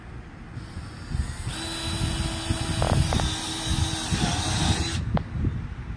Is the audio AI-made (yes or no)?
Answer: no